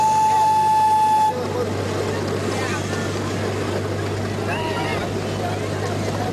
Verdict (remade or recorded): recorded